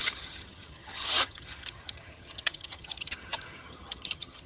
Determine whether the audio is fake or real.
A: fake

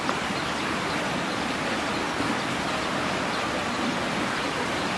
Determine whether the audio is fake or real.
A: real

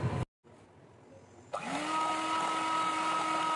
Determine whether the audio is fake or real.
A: real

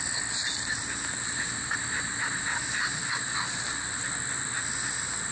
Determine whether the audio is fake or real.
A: real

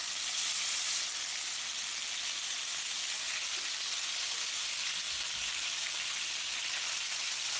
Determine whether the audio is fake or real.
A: real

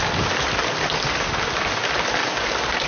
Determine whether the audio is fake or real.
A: real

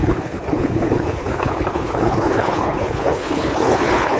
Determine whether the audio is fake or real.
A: fake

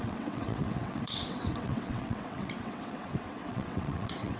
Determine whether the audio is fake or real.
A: fake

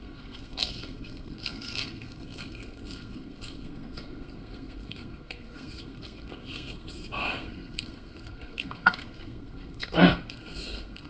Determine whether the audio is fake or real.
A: fake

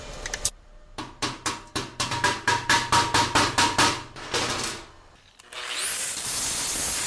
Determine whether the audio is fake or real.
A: real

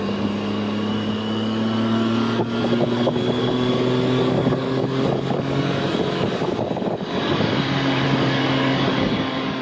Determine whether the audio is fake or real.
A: fake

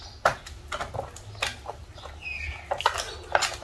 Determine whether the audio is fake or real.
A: real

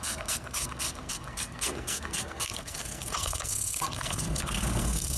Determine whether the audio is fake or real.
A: fake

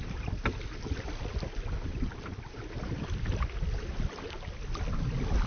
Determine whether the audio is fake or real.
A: real